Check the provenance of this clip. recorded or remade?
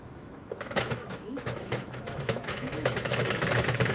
remade